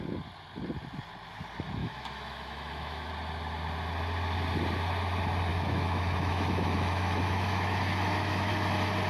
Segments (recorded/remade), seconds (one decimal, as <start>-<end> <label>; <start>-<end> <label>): 0.0-1.8 recorded; 1.8-3.1 remade; 3.1-5.5 recorded; 5.5-8.5 remade; 8.5-9.1 recorded